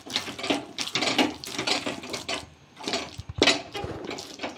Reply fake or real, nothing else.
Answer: real